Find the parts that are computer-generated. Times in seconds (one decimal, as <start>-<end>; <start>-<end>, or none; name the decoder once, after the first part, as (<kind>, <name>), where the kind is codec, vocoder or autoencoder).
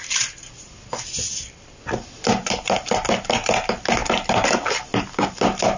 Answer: none